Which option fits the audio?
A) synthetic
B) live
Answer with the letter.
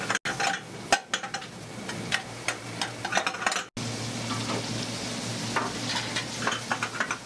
B